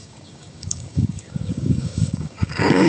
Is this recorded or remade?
remade